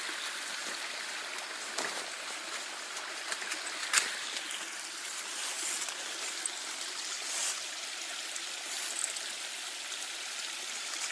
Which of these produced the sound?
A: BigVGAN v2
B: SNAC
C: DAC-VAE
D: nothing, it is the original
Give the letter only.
D